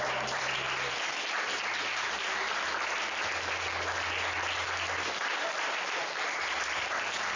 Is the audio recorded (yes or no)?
yes